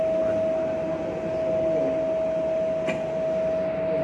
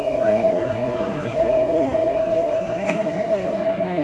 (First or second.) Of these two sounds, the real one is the first